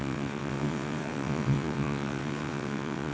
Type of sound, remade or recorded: remade